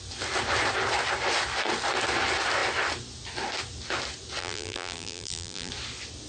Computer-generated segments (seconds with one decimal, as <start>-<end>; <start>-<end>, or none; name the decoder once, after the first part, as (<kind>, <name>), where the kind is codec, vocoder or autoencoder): 4.4-5.7 (vocoder, BigVGAN v2)